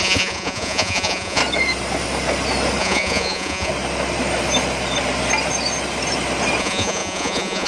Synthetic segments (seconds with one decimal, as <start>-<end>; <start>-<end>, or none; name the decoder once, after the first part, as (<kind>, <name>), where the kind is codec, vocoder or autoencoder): 0.0-1.4 (vocoder, Vocos); 2.8-3.7; 6.6-7.7